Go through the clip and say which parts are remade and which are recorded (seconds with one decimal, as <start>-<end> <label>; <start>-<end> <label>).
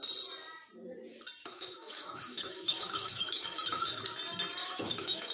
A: 0.0-1.4 recorded; 1.4-4.0 remade; 4.0-4.6 recorded; 4.6-5.3 remade